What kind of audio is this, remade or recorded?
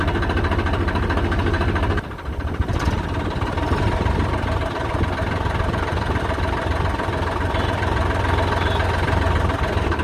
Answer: recorded